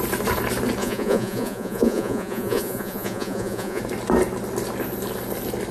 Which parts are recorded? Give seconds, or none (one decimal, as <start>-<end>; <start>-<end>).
0.0-0.8; 3.8-5.7